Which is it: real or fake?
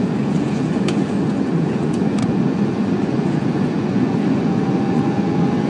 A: fake